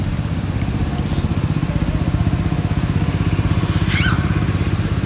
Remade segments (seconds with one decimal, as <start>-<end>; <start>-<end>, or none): none